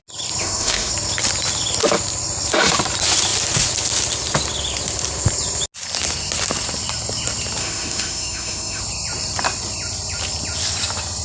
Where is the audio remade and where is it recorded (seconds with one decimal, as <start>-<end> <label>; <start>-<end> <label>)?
0.0-0.4 recorded; 0.4-0.9 remade; 0.9-7.6 recorded; 7.6-8.8 remade; 8.8-11.2 recorded